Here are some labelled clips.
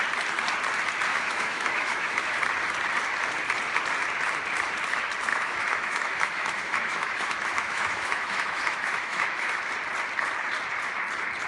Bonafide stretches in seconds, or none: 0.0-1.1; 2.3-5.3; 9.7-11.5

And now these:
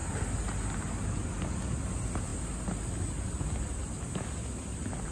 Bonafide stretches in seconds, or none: 0.0-5.1

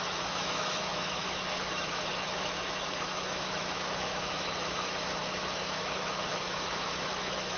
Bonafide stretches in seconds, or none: none